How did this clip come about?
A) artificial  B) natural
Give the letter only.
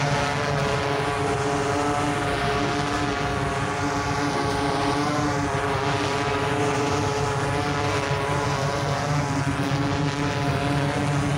B